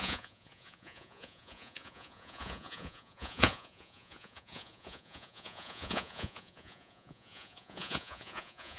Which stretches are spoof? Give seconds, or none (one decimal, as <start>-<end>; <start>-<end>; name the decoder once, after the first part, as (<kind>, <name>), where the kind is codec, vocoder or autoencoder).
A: 0.0-8.8 (vocoder, Vocos)